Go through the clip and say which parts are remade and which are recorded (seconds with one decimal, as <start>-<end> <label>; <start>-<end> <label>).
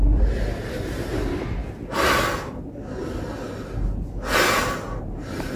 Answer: 0.0-1.6 remade; 1.6-5.0 recorded; 5.0-5.6 remade